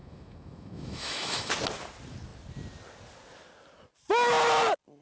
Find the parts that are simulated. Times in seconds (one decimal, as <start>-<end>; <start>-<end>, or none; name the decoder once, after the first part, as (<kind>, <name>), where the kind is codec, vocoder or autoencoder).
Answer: 0.0-1.5 (autoencoder, DAC-VAE)